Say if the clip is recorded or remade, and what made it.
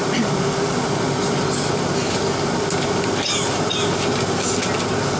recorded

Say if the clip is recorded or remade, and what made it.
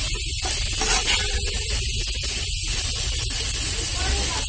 recorded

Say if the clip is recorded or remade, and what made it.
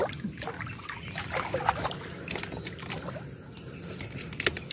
recorded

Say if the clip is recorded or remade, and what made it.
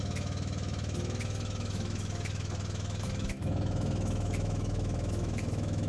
remade, autoencoder, DAC-VAE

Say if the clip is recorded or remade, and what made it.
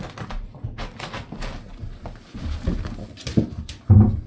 recorded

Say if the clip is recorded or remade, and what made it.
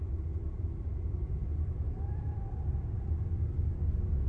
recorded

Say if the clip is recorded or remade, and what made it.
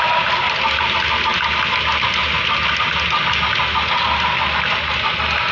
recorded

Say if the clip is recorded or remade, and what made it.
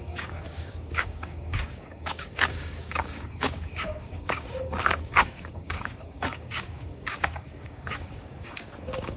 remade, codec, DAC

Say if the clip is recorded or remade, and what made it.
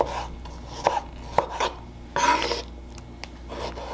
recorded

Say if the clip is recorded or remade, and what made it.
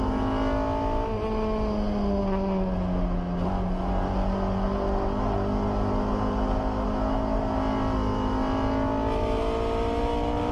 recorded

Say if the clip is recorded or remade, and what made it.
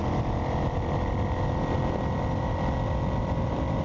recorded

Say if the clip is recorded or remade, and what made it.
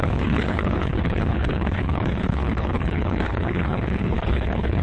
remade, codec, HILCodec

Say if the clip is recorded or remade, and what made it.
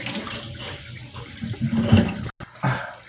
recorded